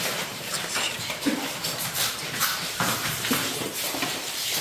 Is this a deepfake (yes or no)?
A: yes